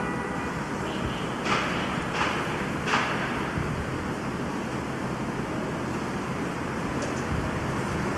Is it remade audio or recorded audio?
recorded